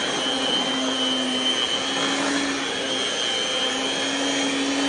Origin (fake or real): real